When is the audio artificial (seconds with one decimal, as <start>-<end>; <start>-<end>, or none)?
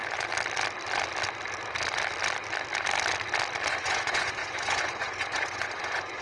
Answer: 3.7-6.2